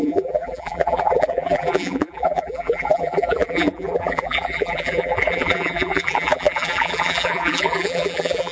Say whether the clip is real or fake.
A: fake